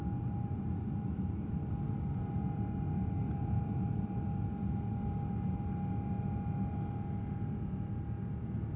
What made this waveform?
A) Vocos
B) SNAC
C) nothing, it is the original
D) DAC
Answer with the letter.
C